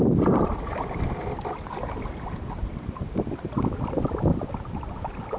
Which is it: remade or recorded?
recorded